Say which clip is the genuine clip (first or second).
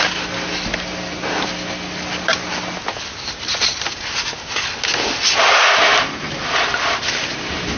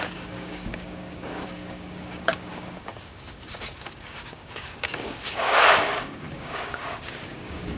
first